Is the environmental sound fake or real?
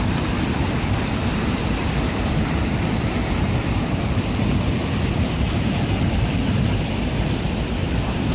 fake